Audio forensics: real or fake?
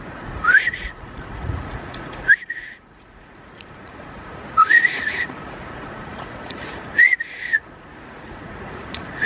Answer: fake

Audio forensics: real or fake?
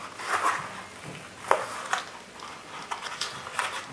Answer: real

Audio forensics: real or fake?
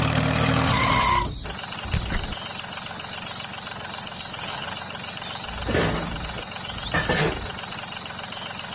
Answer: real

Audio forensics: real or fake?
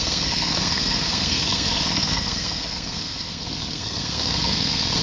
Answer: fake